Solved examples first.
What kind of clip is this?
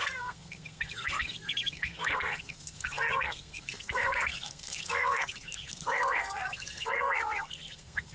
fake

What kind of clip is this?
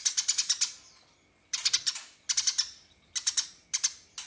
real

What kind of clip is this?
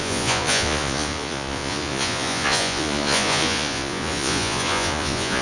fake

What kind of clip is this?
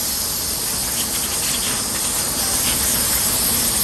real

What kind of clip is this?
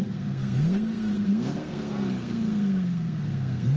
fake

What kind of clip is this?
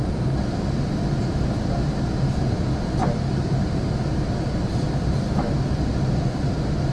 real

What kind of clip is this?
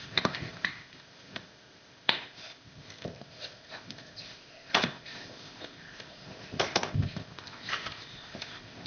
fake